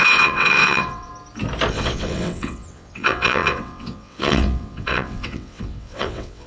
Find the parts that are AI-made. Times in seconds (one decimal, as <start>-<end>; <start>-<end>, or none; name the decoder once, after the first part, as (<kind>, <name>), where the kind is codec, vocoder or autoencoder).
0.0-1.1 (vocoder, WaveNeXt); 1.7-6.5